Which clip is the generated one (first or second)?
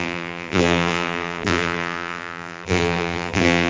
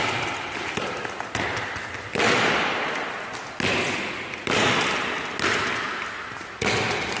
first